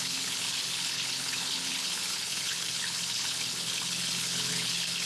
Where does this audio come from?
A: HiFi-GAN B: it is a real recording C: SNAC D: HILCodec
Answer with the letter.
D